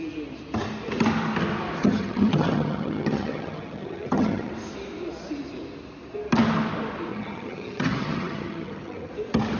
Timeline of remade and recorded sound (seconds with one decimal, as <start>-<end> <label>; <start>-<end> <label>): 0.0-1.8 recorded; 1.8-4.5 remade; 4.5-7.1 recorded; 7.1-9.1 remade; 9.1-9.6 recorded

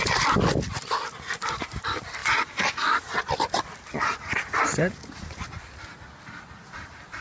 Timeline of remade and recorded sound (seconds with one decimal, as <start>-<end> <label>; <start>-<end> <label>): 0.0-7.2 recorded

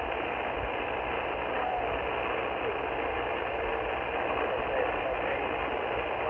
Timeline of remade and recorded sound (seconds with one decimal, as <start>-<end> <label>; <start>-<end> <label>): 0.0-6.3 recorded

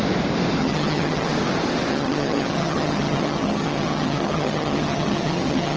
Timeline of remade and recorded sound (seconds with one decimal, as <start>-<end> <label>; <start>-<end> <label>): 0.0-0.6 recorded; 0.6-1.3 remade; 1.3-1.9 recorded; 1.9-5.8 remade

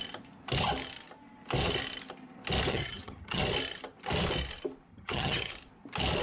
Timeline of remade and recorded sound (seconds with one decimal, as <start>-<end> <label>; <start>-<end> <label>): 0.0-2.7 recorded; 2.7-3.4 remade; 3.4-4.9 recorded; 4.9-5.5 remade; 5.5-6.2 recorded

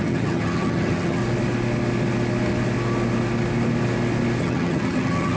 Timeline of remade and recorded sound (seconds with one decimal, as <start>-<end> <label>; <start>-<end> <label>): 0.0-1.2 remade; 1.2-4.4 recorded; 4.4-5.4 remade